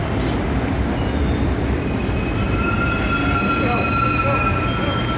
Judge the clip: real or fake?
real